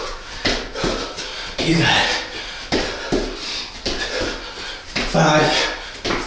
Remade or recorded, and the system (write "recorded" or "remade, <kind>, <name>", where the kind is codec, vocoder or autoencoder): recorded